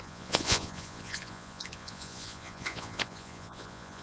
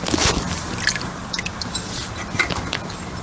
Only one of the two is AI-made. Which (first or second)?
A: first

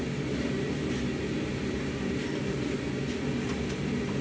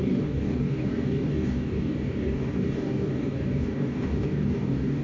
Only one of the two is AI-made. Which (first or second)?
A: second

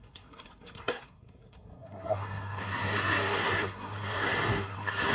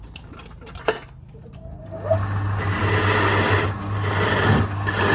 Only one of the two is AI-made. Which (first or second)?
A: first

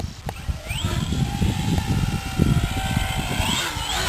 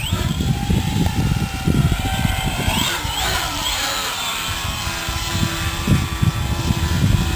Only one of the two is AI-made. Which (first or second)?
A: second